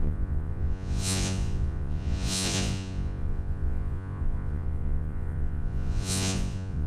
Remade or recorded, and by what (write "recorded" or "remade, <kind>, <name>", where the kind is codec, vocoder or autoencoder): remade, vocoder, Vocos